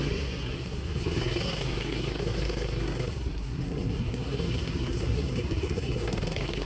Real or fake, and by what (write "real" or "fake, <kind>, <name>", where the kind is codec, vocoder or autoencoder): fake, codec, SNAC